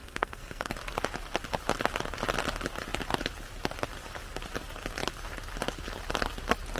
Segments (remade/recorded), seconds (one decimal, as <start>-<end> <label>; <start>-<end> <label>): 0.0-0.7 remade; 0.7-6.8 recorded